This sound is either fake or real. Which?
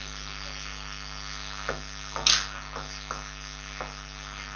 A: real